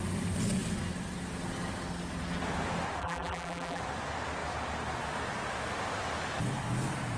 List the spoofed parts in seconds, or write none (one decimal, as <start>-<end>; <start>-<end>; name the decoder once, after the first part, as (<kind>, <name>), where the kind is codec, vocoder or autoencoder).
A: 3.0-3.8 (vocoder, BigVGAN v2)